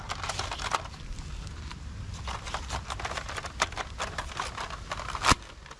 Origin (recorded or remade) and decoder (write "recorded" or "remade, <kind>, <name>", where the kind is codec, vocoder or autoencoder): recorded